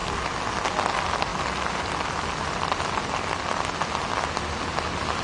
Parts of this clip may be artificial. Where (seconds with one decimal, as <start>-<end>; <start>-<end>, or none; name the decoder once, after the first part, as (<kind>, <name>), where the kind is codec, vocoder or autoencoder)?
none